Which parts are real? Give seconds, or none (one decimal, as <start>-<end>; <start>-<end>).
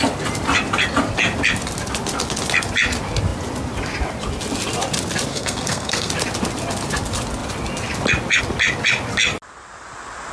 0.0-5.3; 6.1-10.3